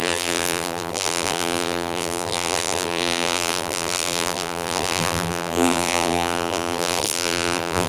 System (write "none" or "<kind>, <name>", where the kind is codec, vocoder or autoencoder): vocoder, BigVGAN v2